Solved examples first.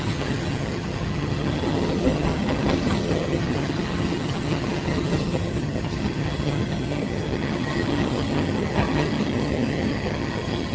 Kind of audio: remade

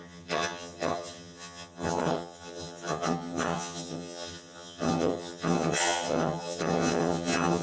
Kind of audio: remade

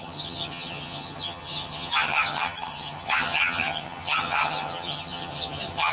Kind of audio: remade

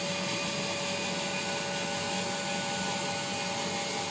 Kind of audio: recorded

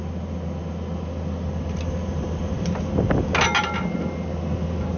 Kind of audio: recorded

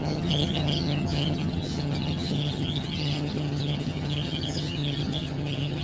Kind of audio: remade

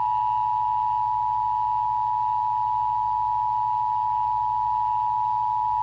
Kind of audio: recorded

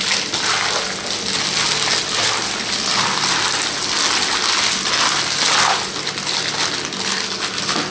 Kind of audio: recorded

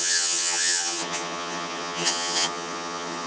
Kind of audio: remade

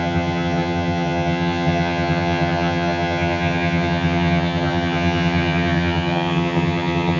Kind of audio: remade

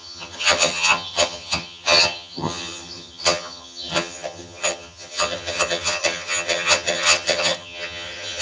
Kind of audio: remade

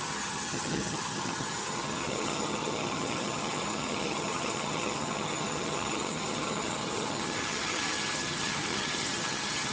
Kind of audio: remade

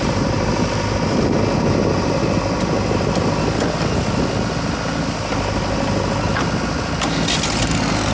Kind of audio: recorded